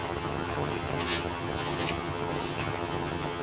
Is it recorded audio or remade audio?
remade